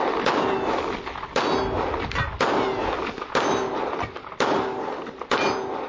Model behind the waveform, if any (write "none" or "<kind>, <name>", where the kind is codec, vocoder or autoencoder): none